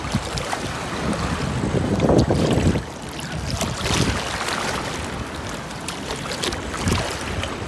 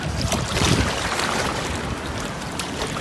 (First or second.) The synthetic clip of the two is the second